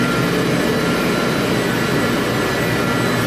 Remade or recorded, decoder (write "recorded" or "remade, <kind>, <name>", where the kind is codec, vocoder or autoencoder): recorded